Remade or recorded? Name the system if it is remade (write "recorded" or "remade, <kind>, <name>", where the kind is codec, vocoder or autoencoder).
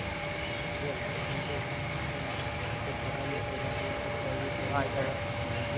recorded